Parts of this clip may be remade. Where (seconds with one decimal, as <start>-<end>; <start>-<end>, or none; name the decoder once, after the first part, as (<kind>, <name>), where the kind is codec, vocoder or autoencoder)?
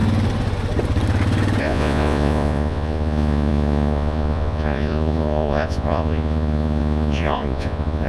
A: 1.6-8.1 (vocoder, Vocos)